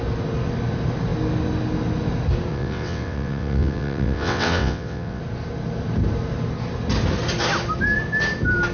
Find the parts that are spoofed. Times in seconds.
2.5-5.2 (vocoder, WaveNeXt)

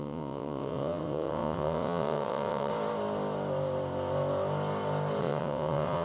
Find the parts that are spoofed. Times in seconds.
0.0-2.7 (vocoder, WaveNeXt); 5.2-6.0

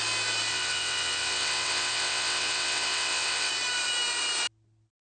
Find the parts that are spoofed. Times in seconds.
0.5-3.5 (vocoder, WaveNeXt)

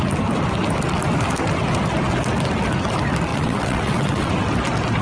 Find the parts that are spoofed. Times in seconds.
3.3-4.3 (vocoder, WaveNeXt)